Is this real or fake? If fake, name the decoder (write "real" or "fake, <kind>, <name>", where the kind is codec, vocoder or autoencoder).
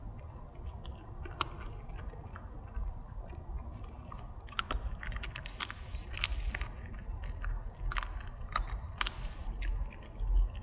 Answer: real